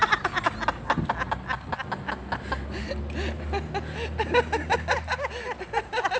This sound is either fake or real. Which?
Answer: real